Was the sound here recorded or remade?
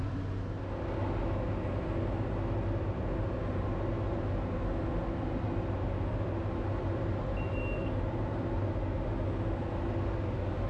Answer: recorded